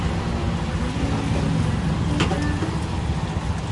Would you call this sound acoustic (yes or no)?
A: yes